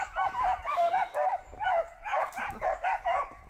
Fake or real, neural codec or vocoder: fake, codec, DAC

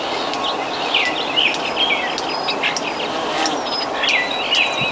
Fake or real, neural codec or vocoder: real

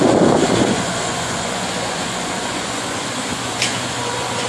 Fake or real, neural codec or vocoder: fake, vocoder, Vocos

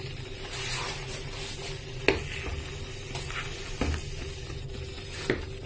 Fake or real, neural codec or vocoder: real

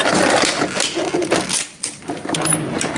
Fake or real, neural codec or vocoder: real